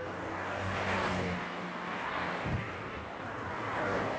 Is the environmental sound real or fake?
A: fake